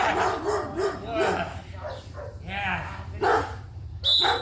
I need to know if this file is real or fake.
real